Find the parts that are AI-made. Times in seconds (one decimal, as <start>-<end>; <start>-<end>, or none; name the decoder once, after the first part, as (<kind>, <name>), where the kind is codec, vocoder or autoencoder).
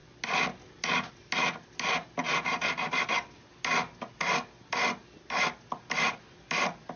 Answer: none